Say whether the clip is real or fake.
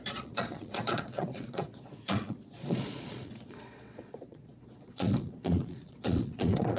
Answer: fake